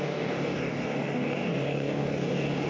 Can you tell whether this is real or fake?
fake